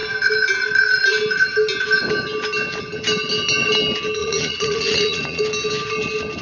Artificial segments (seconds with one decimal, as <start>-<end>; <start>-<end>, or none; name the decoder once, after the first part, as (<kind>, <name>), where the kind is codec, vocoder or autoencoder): 4.2-5.4 (vocoder, Vocos)